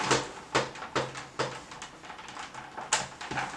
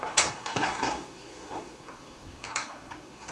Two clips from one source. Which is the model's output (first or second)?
second